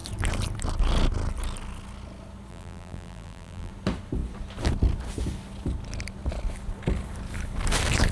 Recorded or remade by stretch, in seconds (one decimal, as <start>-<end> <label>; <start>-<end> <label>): 0.0-2.5 recorded; 2.5-3.7 remade; 3.7-8.1 recorded